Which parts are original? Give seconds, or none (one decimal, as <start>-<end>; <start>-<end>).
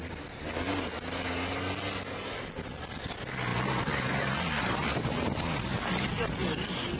0.0-7.0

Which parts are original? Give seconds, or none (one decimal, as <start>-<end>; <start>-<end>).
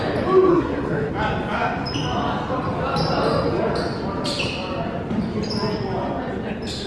0.0-0.5; 1.1-6.9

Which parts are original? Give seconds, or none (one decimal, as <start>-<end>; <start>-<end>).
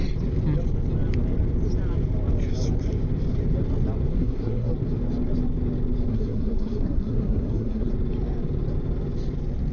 0.0-4.1; 4.7-6.1; 7.9-9.7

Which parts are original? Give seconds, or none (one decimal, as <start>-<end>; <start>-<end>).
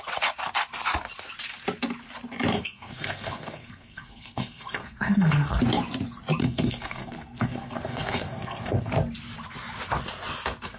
0.0-2.5; 5.6-6.4; 8.9-10.8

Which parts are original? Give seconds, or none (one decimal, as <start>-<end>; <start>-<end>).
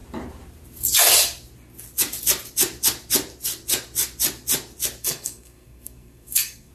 0.0-5.0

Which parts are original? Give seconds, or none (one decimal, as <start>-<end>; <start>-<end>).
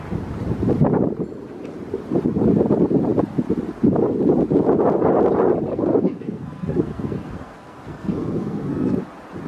0.0-5.7; 9.0-9.5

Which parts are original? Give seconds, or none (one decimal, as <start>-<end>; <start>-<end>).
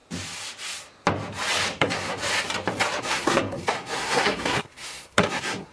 0.0-1.8; 2.2-3.0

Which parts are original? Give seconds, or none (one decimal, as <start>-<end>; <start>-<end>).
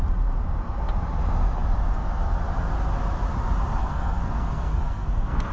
0.0-3.8